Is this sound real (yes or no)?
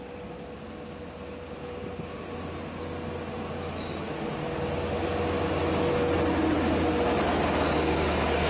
yes